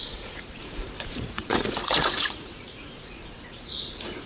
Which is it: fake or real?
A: fake